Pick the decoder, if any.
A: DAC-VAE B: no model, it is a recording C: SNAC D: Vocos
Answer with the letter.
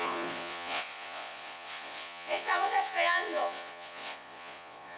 D